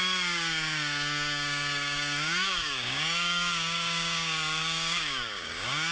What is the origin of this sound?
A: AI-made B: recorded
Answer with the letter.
A